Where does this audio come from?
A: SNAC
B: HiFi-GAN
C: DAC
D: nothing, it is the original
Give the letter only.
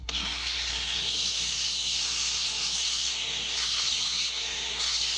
A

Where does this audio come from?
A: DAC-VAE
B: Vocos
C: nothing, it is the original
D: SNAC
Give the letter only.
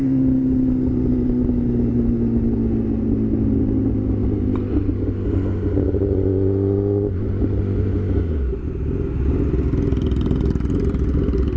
C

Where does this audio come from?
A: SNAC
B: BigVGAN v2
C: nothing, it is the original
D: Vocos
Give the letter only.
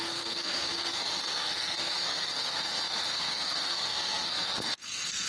A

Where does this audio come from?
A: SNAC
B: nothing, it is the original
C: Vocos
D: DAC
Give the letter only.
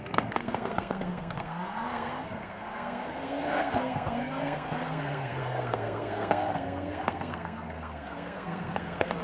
A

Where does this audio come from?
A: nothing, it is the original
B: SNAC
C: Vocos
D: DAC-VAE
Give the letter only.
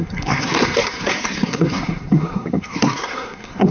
B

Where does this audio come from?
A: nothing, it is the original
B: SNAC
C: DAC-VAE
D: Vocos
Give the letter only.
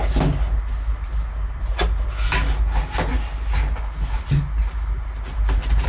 A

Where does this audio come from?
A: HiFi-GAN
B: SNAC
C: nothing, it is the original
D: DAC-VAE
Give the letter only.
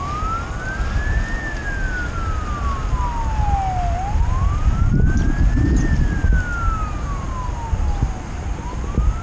C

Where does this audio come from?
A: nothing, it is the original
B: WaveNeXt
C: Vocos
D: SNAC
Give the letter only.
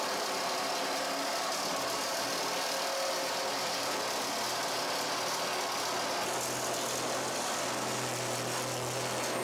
A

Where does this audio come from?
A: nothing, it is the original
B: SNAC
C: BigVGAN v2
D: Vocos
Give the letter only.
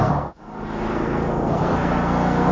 B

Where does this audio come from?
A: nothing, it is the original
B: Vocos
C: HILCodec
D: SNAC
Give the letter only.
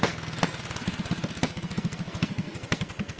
D